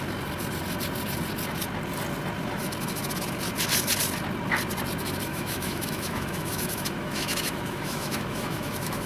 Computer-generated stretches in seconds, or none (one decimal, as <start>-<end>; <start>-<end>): 5.3-9.1